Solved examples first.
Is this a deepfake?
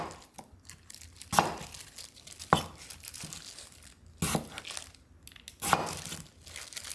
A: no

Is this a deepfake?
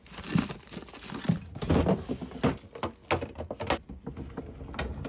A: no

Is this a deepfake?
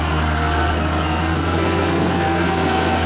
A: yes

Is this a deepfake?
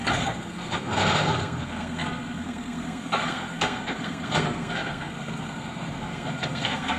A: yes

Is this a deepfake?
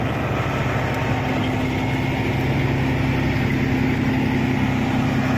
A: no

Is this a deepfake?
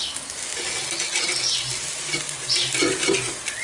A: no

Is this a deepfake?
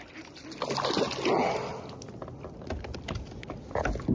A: no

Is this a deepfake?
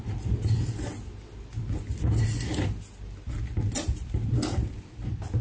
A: no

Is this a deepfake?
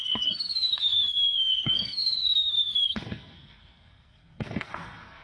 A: yes